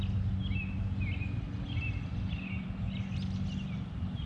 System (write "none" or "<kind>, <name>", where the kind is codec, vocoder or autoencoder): none